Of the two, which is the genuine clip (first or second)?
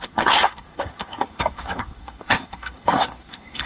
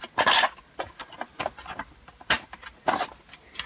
second